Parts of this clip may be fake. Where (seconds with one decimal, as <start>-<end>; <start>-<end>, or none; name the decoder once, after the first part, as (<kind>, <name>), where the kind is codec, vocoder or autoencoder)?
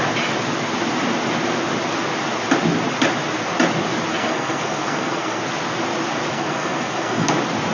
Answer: 4.1-5.4 (codec, SNAC); 6.3-7.3